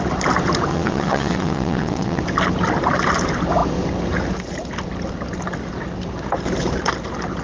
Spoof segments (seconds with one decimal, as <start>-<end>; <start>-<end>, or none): 0.7-2.2